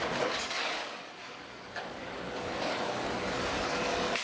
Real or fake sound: fake